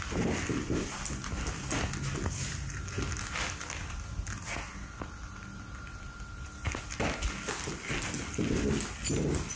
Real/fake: real